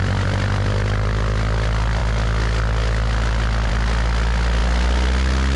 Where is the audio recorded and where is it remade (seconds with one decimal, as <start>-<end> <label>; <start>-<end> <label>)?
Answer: 0.0-5.6 recorded